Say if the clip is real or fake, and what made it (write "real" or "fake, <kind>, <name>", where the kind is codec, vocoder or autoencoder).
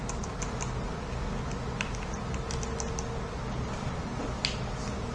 real